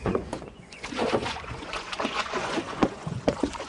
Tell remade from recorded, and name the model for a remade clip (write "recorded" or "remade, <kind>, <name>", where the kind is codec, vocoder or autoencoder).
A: remade, vocoder, Vocos